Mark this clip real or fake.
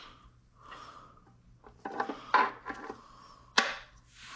real